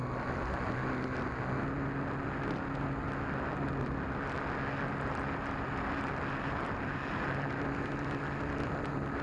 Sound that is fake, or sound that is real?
real